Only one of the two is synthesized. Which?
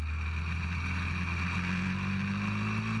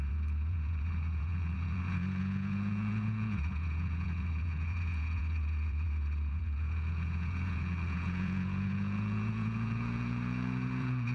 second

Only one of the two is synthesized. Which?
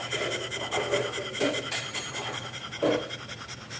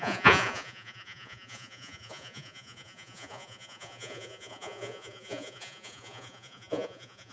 second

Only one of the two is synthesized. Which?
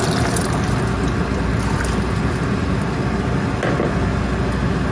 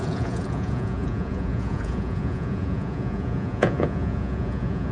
second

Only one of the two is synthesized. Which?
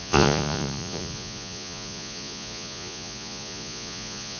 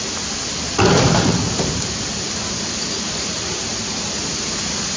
first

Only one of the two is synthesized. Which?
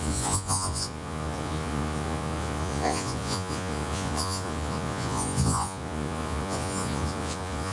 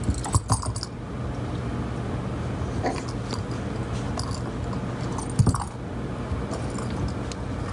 first